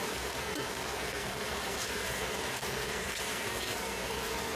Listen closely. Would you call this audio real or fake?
fake